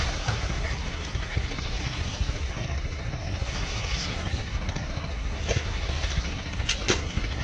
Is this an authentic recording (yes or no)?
no